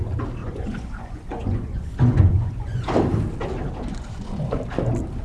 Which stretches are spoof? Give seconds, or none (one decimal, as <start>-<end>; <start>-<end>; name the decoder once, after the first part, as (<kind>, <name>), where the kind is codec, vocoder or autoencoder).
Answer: 0.4-2.9 (vocoder, Vocos); 3.9-4.6